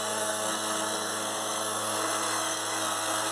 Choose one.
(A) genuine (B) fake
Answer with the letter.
B